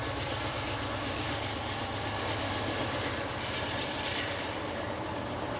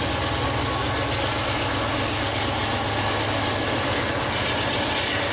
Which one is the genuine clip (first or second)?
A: second